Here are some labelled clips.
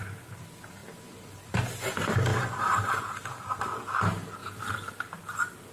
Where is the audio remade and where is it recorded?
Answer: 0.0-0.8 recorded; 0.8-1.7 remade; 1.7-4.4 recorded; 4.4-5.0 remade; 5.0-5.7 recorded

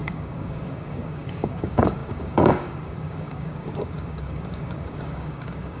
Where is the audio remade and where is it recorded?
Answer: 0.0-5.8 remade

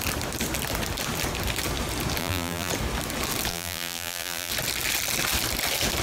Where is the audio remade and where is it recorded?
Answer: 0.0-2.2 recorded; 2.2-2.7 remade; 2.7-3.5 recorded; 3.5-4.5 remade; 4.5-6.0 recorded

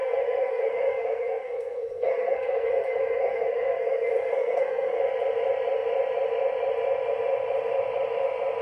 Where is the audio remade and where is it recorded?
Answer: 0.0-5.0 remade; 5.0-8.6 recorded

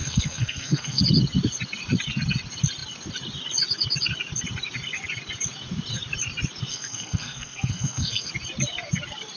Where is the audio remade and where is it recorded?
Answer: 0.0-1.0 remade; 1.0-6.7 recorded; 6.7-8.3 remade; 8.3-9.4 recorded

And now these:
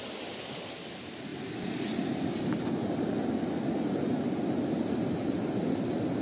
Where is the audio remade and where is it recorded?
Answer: 0.0-6.2 recorded

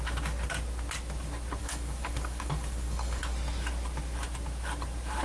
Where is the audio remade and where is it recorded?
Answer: 0.0-1.6 recorded; 1.6-3.2 remade; 3.2-5.2 recorded

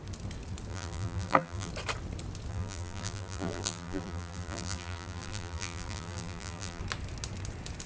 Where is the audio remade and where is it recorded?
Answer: 0.0-0.7 recorded; 0.7-1.7 remade; 1.7-2.5 recorded; 2.5-6.8 remade; 6.8-7.9 recorded